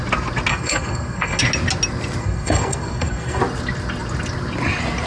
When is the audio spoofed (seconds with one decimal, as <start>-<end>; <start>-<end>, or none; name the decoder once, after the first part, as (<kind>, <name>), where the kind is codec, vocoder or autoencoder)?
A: 0.5-1.4 (codec, SNAC); 2.2-3.4